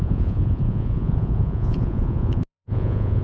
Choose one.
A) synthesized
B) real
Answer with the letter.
A